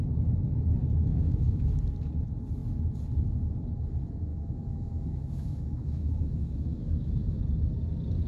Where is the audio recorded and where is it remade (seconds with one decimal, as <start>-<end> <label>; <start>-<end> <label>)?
0.0-0.8 recorded; 0.8-1.6 remade; 1.6-4.3 recorded; 4.3-7.4 remade; 7.4-8.3 recorded